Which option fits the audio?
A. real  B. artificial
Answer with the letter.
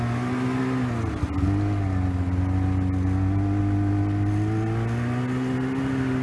A